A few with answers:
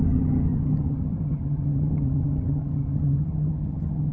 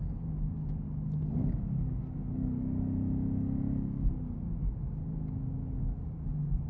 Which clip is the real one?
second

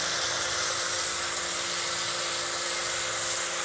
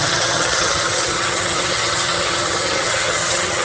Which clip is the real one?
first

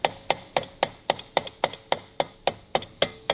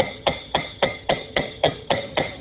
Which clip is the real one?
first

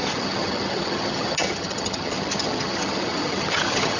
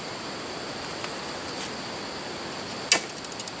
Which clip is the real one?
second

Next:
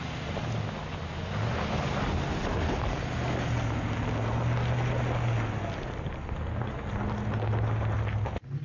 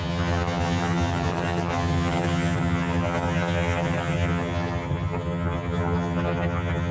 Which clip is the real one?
first